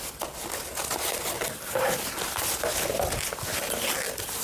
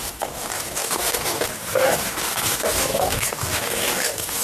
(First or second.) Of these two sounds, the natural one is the first